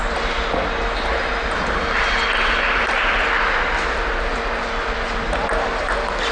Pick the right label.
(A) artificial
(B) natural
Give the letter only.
B